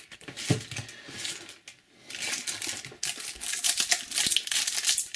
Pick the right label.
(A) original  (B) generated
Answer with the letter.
A